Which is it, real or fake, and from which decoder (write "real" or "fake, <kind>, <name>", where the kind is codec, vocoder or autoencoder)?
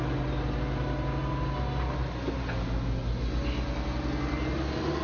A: real